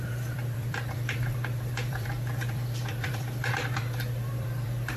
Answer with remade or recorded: remade